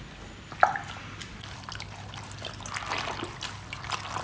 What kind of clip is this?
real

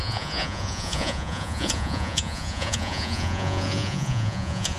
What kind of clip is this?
fake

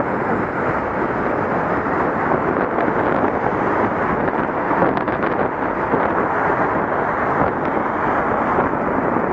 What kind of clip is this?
real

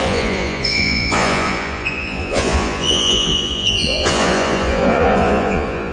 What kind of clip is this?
fake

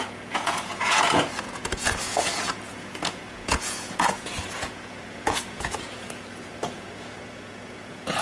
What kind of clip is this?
fake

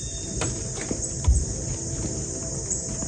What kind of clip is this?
real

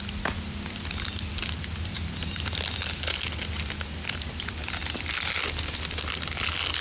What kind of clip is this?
real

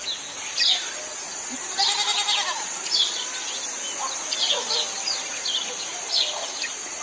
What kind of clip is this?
real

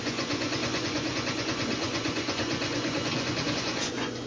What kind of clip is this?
fake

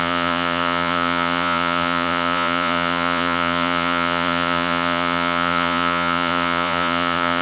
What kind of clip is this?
fake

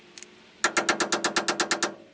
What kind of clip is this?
real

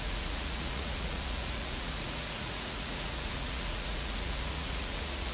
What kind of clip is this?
fake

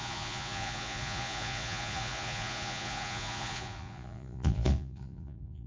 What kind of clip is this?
fake